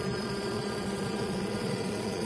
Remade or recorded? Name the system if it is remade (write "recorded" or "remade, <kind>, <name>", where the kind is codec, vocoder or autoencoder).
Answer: remade, vocoder, Vocos